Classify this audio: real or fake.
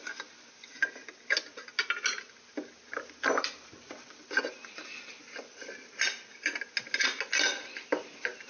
real